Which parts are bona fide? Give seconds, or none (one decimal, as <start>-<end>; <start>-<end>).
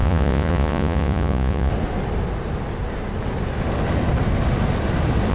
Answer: 1.7-5.3